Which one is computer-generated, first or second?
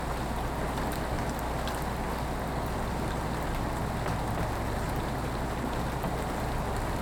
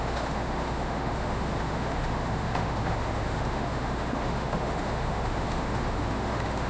second